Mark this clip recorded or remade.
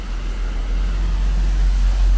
recorded